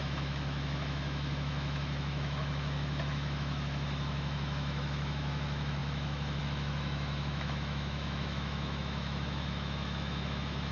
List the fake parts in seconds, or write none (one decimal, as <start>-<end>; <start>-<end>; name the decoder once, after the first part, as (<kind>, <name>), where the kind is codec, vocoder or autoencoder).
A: 0.0-10.7 (autoencoder, DAC-VAE)